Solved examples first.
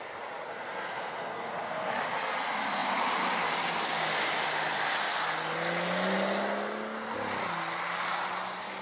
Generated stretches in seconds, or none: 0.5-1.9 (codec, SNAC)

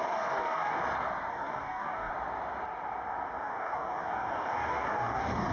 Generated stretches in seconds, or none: 0.0-0.8 (codec, DAC); 1.3-2.1; 3.4-5.5

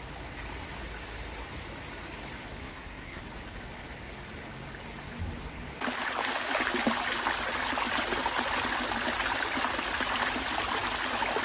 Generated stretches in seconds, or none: 2.6-3.2 (codec, SNAC)

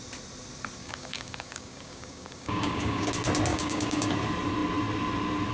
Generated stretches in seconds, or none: 0.8-3.1 (codec, DAC); 3.5-4.1

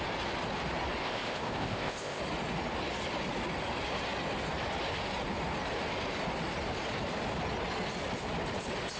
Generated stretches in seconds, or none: 1.0-2.2 (codec, ZipCodec)

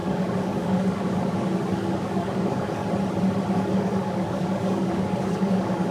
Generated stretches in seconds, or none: 0.0-2.8 (codec, DAC); 3.5-5.9

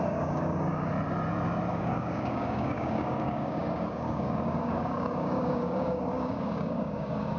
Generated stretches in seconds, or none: 0.0-0.9 (codec, DAC); 1.7-7.4

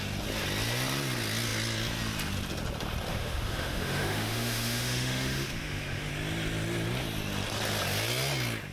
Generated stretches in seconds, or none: 3.1-6.1 (autoencoder, DAC-VAE)